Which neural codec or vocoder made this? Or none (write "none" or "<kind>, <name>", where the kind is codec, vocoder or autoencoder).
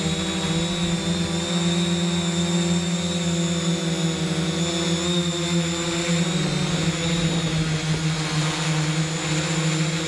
none